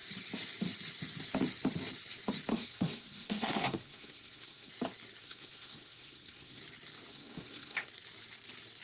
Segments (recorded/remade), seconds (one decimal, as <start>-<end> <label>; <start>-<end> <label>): 0.0-2.5 recorded; 2.5-4.7 remade; 4.7-5.2 recorded; 5.2-6.6 remade; 6.6-7.1 recorded; 7.1-7.9 remade; 7.9-8.8 recorded